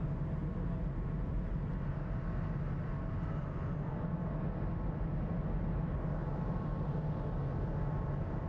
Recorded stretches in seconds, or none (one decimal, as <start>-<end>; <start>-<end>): 0.0-6.2; 7.0-8.5